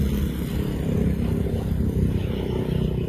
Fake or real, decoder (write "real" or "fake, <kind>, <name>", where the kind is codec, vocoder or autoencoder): real